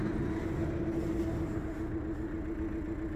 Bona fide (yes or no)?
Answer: yes